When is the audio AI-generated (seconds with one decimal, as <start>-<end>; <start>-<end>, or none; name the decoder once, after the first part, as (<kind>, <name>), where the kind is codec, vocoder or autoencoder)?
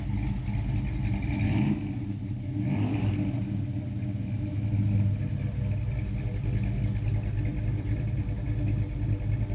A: 7.5-8.2 (vocoder, BigVGAN v2)